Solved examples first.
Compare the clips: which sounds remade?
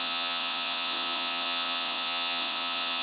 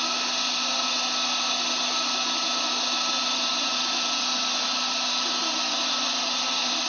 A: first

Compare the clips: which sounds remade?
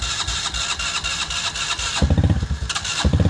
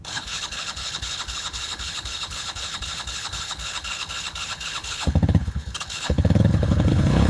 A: second